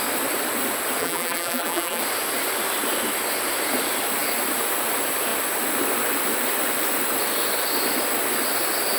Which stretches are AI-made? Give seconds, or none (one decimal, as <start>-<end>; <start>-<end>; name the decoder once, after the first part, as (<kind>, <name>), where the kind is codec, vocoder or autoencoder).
1.0-2.0 (vocoder, BigVGAN v2)